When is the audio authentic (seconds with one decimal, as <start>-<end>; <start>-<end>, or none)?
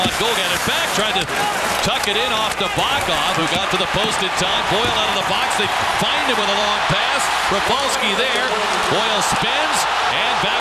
0.0-3.4; 4.6-6.2; 7.0-10.6